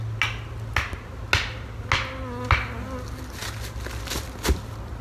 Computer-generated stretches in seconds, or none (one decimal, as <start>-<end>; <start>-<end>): none